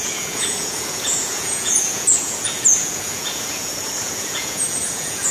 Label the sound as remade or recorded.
remade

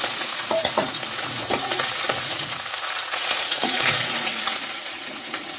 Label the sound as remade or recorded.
remade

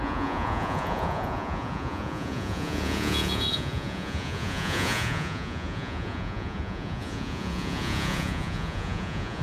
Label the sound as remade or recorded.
remade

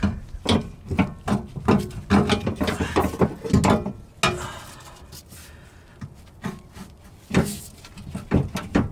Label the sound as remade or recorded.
recorded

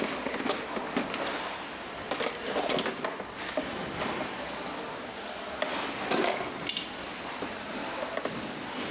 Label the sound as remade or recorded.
recorded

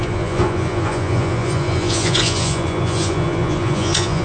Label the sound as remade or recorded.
remade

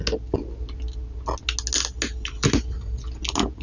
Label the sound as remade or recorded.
recorded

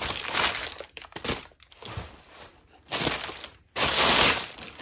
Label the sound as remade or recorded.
recorded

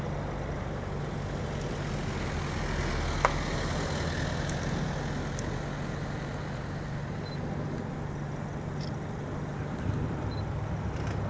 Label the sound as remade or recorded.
recorded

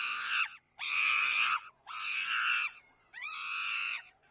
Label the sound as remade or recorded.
remade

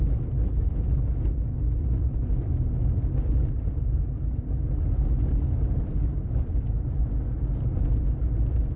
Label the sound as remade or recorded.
recorded